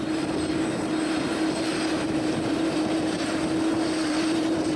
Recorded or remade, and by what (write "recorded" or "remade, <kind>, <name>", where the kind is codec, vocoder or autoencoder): remade, vocoder, BigVGAN v2